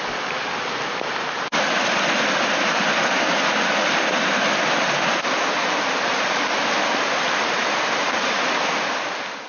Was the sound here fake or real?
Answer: real